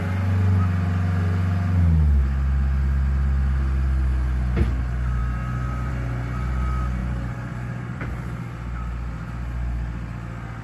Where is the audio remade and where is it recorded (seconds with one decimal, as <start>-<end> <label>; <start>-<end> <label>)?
0.0-7.0 recorded; 7.0-8.0 remade; 8.0-10.6 recorded

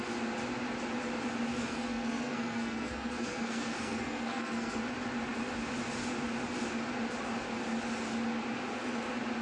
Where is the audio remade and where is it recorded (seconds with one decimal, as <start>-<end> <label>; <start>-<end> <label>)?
0.0-1.5 recorded; 1.5-4.8 remade; 4.8-9.4 recorded

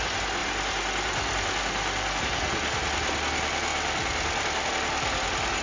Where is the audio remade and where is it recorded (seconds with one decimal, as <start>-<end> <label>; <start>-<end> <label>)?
0.0-5.6 recorded

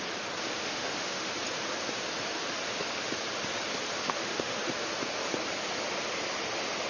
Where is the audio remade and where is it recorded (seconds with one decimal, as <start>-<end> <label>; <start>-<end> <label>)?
0.0-0.4 recorded; 0.4-1.3 remade; 1.3-4.0 recorded; 4.0-4.6 remade; 4.6-6.9 recorded

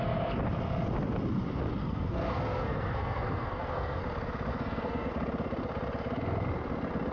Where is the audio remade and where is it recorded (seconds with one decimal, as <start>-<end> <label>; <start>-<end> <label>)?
0.0-1.8 recorded; 1.8-4.0 remade; 4.0-4.5 recorded; 4.5-5.1 remade; 5.1-7.1 recorded

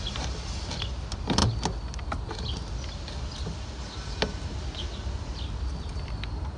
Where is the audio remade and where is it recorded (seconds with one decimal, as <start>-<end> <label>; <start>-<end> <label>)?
0.0-6.6 recorded

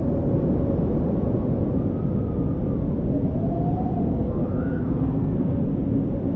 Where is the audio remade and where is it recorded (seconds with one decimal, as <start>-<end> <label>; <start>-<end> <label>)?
0.0-4.1 recorded; 4.1-5.6 remade; 5.6-6.4 recorded